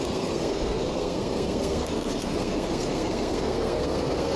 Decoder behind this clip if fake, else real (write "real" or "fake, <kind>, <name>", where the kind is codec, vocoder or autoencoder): fake, codec, SNAC